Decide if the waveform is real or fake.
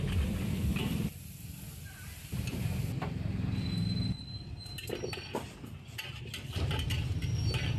real